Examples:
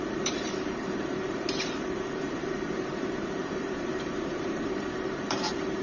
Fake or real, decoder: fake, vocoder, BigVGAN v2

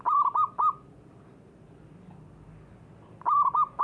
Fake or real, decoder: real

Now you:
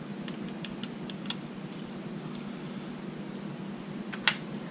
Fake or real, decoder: real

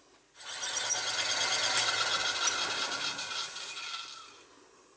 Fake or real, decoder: real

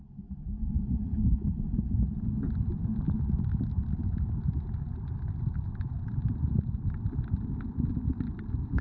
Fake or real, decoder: real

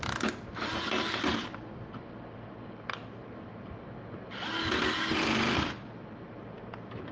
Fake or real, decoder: real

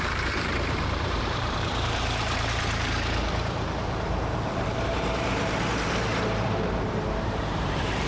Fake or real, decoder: fake, vocoder, BigVGAN v2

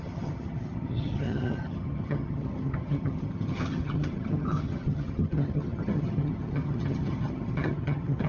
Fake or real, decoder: fake, vocoder, HiFi-GAN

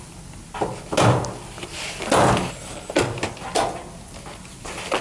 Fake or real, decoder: real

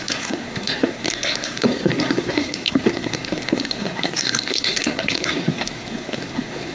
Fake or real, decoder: fake, codec, SNAC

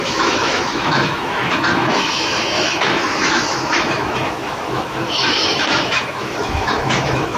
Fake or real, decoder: fake, autoencoder, DAC-VAE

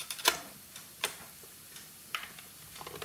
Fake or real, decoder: real